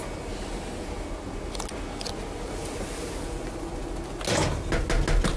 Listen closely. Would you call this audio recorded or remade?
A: recorded